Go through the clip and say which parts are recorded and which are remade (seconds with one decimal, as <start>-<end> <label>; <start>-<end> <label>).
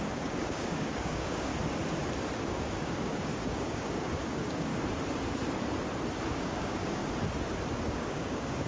0.0-1.5 remade; 1.5-2.4 recorded; 2.4-4.7 remade; 4.7-6.3 recorded; 6.3-7.0 remade; 7.0-7.8 recorded; 7.8-8.7 remade